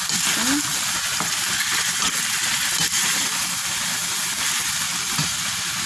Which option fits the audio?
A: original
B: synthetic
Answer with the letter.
A